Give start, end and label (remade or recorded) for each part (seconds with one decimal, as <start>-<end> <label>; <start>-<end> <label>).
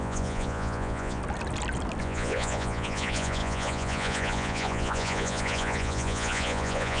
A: 0.0-1.2 remade; 1.2-2.0 recorded; 2.0-7.0 remade